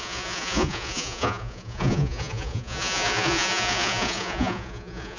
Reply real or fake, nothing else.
fake